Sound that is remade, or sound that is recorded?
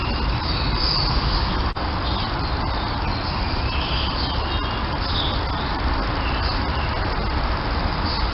recorded